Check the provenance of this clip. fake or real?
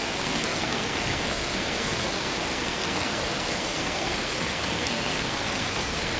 fake